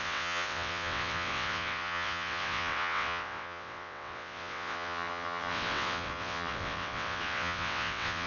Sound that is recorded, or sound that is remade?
remade